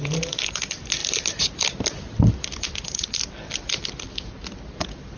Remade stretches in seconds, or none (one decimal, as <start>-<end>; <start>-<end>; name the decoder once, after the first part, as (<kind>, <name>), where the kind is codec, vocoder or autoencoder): none